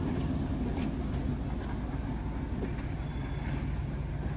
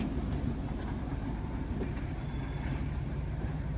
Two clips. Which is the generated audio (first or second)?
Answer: second